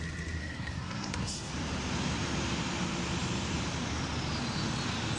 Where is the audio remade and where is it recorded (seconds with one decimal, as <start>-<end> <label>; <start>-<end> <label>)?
0.0-0.4 recorded; 0.4-1.5 remade; 1.5-5.2 recorded